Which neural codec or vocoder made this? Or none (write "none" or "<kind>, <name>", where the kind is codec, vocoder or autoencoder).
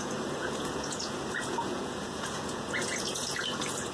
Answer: vocoder, Vocos